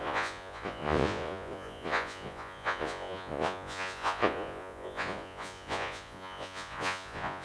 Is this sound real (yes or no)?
no